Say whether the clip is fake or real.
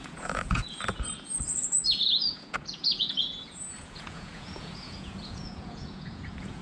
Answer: fake